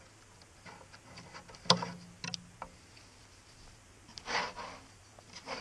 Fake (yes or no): no